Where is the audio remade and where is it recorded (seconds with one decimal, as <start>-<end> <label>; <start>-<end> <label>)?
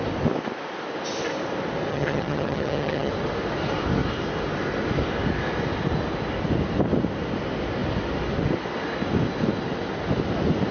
0.0-1.9 recorded; 1.9-3.1 remade; 3.1-10.7 recorded